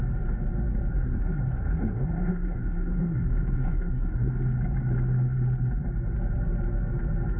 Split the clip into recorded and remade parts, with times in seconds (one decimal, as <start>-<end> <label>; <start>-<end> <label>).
0.0-0.9 recorded; 0.9-4.3 remade; 4.3-7.4 recorded